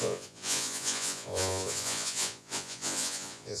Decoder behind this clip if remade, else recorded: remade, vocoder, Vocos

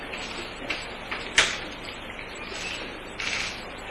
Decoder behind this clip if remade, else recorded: recorded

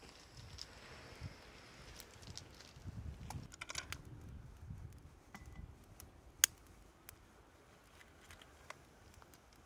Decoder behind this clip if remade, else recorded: recorded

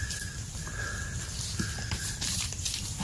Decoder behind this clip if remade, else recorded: recorded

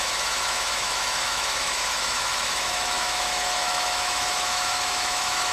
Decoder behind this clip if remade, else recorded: remade, autoencoder, DAC-VAE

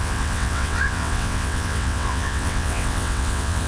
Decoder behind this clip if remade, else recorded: remade, vocoder, WaveNeXt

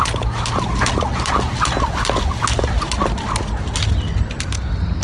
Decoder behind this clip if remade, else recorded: recorded